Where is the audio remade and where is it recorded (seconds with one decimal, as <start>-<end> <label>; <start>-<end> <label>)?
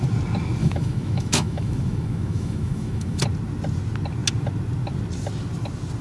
0.0-0.6 recorded; 0.6-3.2 remade; 3.2-6.0 recorded